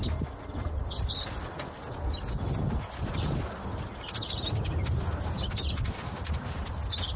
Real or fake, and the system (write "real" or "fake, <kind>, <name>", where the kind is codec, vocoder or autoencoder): real